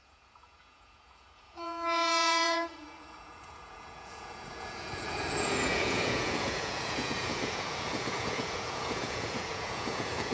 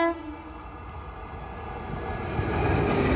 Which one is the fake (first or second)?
first